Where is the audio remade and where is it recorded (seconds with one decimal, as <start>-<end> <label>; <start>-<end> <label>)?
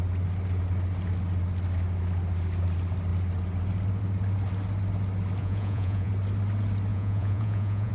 0.0-5.4 recorded; 5.4-6.1 remade; 6.1-6.9 recorded; 6.9-7.9 remade